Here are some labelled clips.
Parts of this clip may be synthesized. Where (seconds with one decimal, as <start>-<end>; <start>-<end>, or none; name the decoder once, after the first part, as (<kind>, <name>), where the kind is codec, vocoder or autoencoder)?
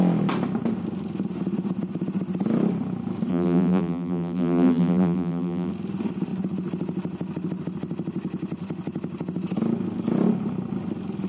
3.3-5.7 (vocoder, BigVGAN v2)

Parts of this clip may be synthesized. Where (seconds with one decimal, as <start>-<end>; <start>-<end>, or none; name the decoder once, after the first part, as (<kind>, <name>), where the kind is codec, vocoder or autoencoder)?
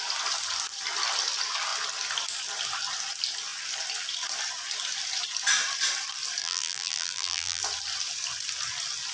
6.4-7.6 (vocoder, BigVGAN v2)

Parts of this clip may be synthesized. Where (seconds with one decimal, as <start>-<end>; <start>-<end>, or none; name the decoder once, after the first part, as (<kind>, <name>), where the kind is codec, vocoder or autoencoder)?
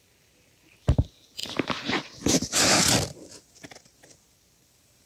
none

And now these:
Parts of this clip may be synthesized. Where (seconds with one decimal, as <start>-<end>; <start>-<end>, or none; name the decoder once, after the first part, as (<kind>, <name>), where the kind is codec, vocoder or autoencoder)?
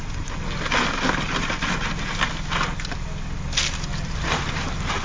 3.9-5.0 (vocoder, BigVGAN v2)